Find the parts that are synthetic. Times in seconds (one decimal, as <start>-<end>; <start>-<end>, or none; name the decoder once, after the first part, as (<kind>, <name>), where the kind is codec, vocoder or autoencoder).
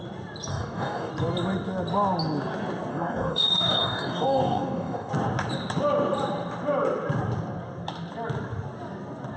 0.5-1.1 (codec, DAC); 2.9-5.1